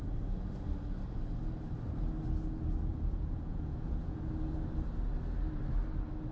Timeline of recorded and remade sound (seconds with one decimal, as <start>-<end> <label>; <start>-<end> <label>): 0.0-2.9 recorded; 2.9-4.2 remade; 4.2-6.3 recorded